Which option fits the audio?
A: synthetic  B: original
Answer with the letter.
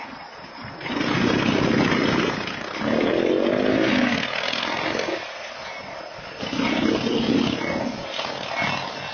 B